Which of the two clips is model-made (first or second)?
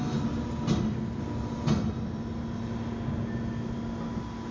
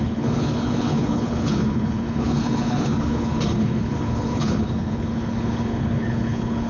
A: second